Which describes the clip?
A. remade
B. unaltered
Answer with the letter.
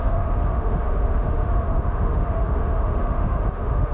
A